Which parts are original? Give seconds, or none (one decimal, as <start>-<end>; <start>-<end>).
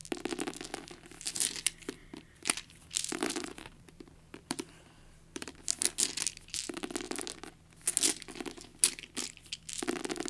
0.0-2.0; 5.6-10.3